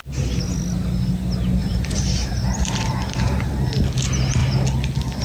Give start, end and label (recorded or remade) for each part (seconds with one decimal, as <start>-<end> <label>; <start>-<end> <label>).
0.0-1.6 recorded; 1.6-3.5 remade; 3.5-5.2 recorded